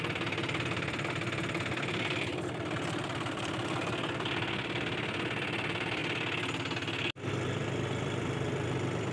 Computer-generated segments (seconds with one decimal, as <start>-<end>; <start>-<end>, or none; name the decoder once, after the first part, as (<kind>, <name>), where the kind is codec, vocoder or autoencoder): 0.0-6.0 (vocoder, BigVGAN v2); 7.3-9.1